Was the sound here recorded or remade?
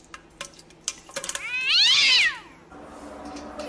recorded